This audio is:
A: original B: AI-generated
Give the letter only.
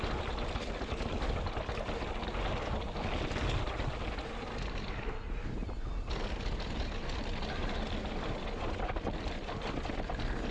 A